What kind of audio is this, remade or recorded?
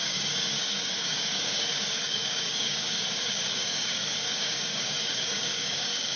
remade